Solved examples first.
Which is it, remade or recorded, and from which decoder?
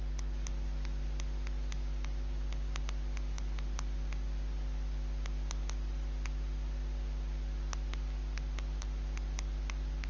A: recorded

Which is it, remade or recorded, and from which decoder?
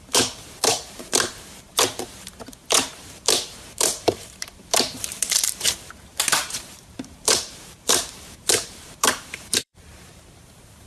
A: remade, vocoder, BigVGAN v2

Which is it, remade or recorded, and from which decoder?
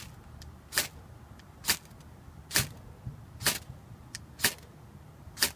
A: recorded